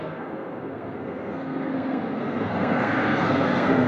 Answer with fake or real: fake